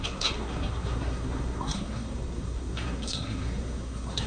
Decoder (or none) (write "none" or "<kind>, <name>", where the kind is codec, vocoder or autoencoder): codec, SNAC